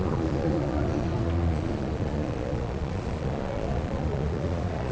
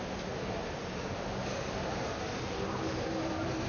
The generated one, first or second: first